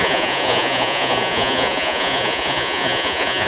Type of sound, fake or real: fake